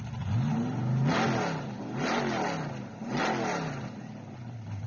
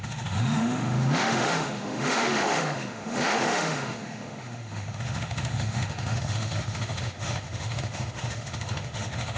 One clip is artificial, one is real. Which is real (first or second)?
first